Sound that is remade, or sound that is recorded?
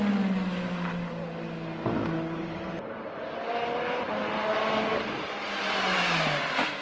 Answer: recorded